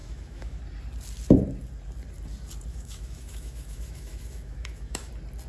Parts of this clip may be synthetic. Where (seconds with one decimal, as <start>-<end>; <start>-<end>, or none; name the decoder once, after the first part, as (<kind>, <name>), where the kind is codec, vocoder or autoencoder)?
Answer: 0.0-0.6 (autoencoder, DAC-VAE); 2.7-5.1